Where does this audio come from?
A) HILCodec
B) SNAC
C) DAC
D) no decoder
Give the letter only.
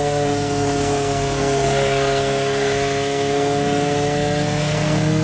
B